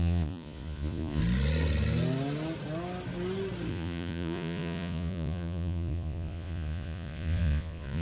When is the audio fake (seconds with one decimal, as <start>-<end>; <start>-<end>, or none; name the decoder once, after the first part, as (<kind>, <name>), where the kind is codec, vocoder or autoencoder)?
0.0-1.2 (vocoder, Vocos); 3.7-8.0